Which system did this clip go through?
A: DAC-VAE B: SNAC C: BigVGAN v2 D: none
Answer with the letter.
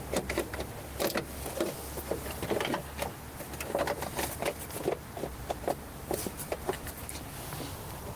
D